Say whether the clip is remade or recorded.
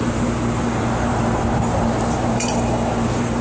remade